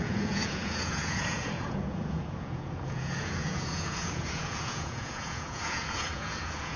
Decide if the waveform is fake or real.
fake